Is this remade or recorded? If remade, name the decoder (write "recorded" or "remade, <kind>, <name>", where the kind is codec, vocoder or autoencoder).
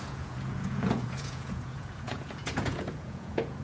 remade, vocoder, Vocos